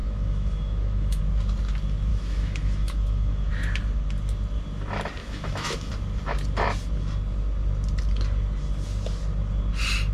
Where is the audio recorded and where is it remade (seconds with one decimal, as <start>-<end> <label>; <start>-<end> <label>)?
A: 0.0-1.2 remade; 1.2-2.1 recorded; 2.1-3.5 remade; 3.5-5.2 recorded; 5.2-5.9 remade; 5.9-10.1 recorded